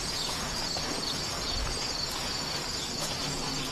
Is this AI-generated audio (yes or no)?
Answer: yes